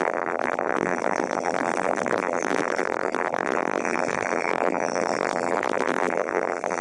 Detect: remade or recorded remade